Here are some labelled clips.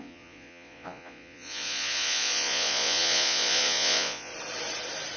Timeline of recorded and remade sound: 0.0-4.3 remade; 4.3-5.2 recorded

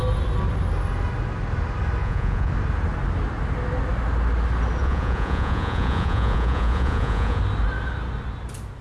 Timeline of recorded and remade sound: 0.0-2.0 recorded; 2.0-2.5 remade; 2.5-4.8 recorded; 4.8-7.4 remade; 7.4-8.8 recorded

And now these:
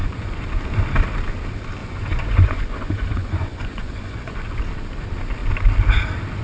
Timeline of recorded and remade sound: 0.0-0.5 remade; 0.5-1.8 recorded; 1.8-4.6 remade; 4.6-6.4 recorded